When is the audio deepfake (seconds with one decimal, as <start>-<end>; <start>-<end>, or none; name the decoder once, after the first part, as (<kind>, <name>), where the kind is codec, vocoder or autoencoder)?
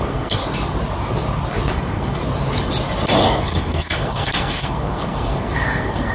0.0-0.4 (codec, SNAC); 1.7-2.2; 3.3-6.1